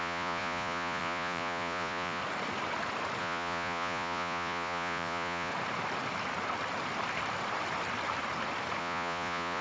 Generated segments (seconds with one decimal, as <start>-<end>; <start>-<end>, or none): 0.0-2.2; 3.2-5.5; 8.8-9.6